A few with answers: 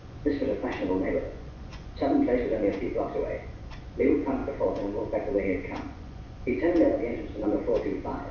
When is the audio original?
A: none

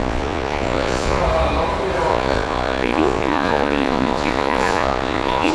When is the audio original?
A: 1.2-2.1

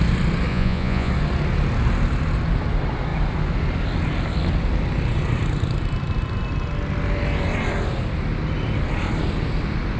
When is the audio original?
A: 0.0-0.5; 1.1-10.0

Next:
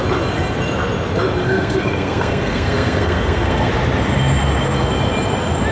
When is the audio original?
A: 0.0-1.4; 3.7-5.7

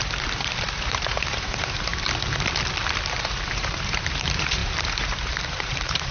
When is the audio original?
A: 1.9-3.2

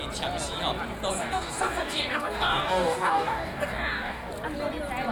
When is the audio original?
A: 0.0-1.2; 4.3-5.1

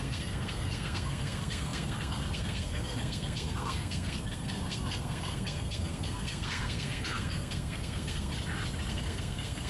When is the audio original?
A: 8.3-8.9